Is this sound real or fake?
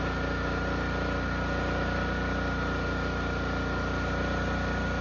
real